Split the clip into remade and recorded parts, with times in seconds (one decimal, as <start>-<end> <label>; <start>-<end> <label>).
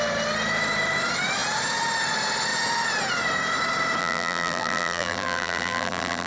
0.0-4.0 recorded; 4.0-6.3 remade